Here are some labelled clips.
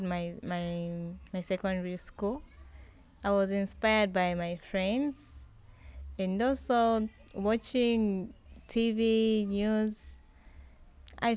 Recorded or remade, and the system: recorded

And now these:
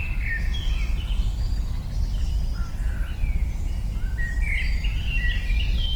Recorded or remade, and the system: recorded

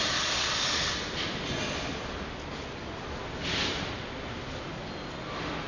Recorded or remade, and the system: recorded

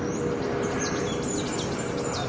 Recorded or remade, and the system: recorded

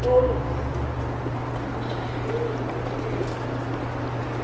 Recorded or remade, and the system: recorded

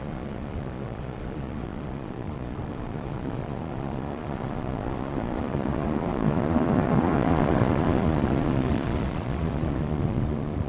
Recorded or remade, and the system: remade, vocoder, Vocos